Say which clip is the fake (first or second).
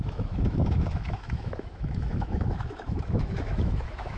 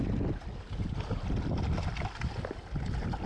first